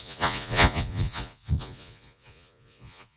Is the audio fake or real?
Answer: fake